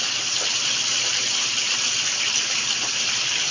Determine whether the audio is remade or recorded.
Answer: remade